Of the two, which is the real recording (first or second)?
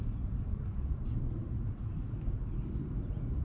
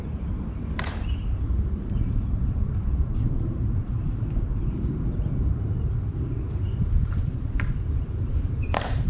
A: first